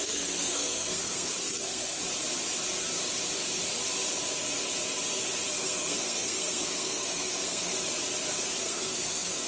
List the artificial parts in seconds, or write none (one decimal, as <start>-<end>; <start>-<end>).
0.0-2.0; 5.5-7.7; 8.6-9.5